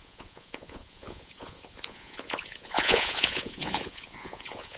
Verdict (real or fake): fake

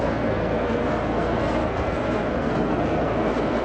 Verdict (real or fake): fake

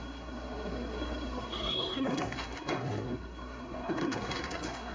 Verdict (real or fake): fake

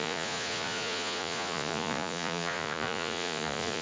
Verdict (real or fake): fake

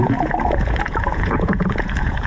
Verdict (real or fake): fake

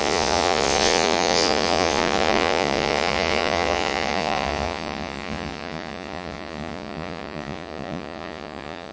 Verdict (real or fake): fake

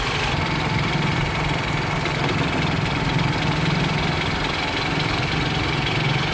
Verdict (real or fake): real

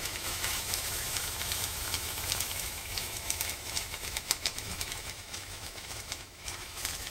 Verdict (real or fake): fake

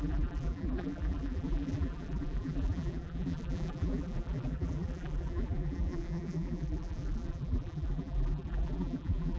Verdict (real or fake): fake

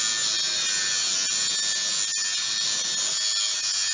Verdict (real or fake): real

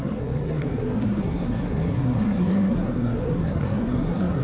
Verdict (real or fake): fake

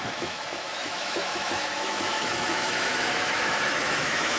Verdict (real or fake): fake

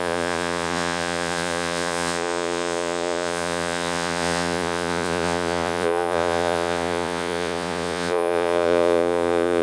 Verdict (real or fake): fake